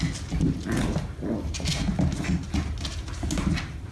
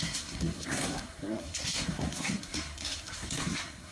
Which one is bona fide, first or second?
first